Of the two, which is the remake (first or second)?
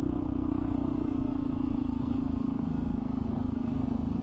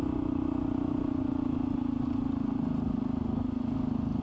first